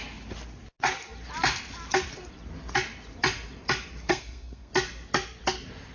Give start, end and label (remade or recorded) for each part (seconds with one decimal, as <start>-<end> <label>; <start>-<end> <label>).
0.0-4.1 recorded; 4.1-4.7 remade; 4.7-5.9 recorded